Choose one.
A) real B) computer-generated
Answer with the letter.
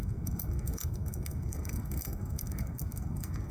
B